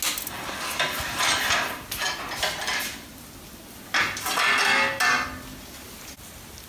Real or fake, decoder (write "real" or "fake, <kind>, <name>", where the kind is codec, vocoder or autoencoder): real